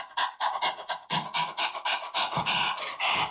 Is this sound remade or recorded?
remade